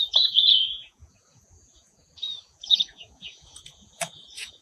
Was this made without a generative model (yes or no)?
no